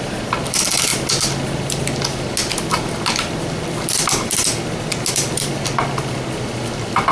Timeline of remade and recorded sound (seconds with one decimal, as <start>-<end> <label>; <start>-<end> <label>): 0.0-7.1 recorded